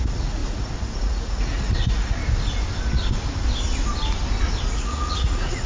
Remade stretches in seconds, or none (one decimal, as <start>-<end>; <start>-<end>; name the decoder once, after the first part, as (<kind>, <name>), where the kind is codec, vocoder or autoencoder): 0.0-2.2 (vocoder, Vocos); 4.6-5.7